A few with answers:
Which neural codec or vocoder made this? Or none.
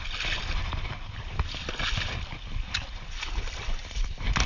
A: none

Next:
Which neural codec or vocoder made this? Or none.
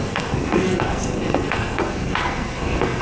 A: codec, SNAC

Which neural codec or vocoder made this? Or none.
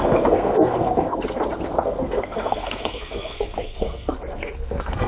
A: codec, SNAC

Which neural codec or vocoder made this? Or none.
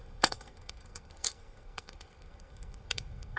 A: codec, SNAC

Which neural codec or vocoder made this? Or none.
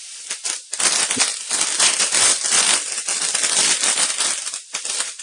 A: none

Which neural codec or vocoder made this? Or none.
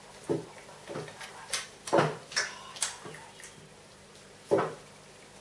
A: none